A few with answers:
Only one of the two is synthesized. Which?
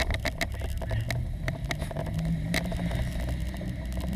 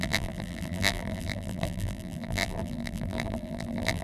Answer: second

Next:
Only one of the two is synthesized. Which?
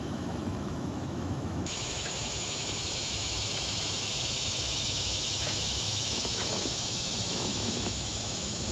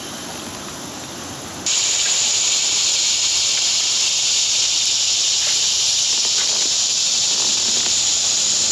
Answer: first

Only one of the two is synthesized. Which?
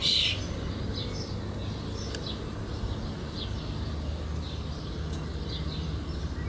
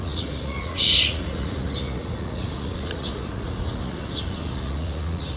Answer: second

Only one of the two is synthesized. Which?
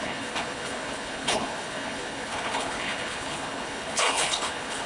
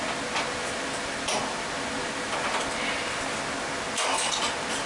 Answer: first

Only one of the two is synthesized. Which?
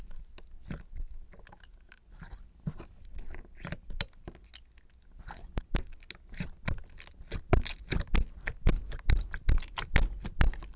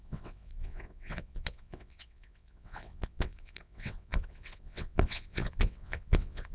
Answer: second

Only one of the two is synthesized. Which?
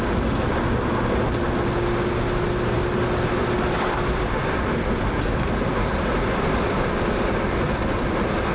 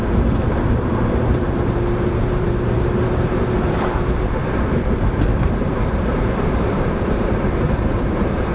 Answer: second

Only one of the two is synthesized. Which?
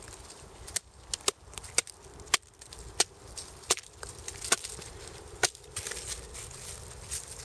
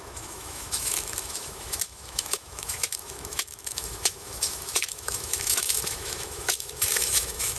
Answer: second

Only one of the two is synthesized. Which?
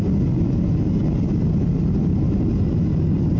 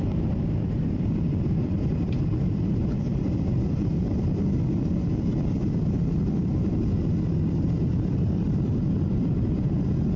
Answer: second